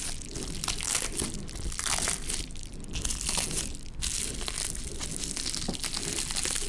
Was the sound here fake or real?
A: real